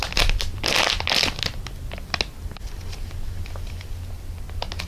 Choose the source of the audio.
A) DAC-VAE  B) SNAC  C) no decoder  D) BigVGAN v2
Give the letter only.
C